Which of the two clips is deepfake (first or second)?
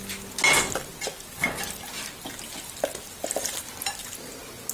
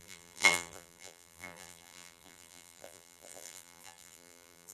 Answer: second